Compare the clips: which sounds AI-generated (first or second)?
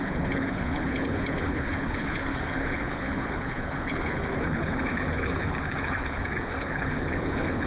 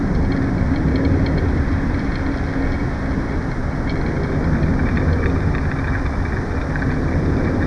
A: first